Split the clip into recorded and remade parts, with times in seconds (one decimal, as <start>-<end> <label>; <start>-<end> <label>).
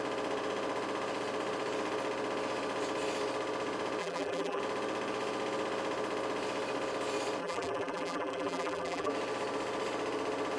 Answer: 0.0-4.0 recorded; 4.0-4.6 remade; 4.6-7.4 recorded; 7.4-9.1 remade; 9.1-10.6 recorded